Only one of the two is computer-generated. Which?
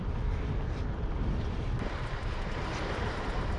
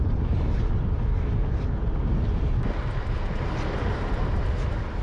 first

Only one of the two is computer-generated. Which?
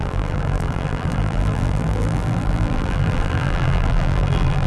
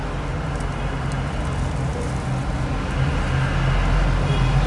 first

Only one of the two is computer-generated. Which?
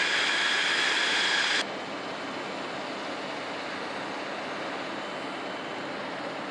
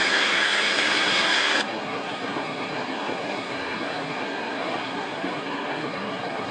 second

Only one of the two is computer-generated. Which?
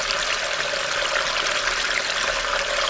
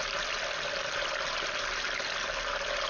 first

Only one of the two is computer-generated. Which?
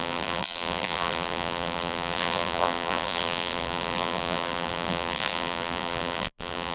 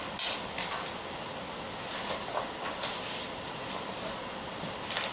first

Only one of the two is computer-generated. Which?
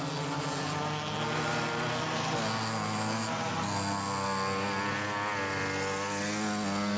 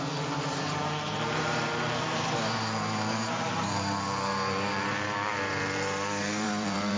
second